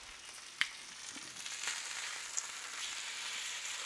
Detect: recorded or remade recorded